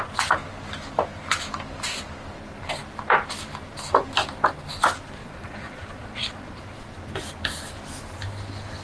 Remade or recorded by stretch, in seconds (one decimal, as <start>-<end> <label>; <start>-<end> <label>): 0.0-5.2 recorded; 5.2-6.6 remade; 6.6-8.8 recorded